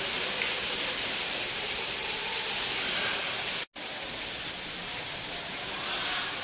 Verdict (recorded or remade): recorded